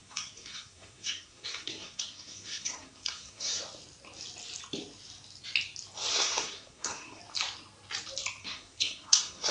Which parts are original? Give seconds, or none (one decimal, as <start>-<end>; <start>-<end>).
3.6-6.1; 7.2-8.4